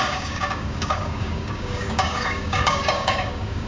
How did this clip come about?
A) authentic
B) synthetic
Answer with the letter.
B